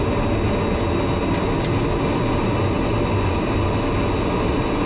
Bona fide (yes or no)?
yes